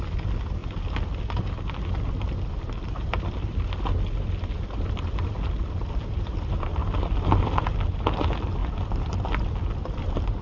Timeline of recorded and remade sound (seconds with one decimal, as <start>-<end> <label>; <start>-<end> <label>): 0.0-10.4 recorded